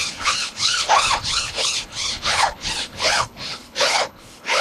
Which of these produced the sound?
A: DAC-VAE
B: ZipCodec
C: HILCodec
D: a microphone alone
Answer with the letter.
C